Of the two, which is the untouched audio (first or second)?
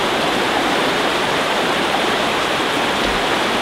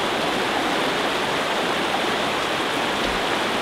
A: second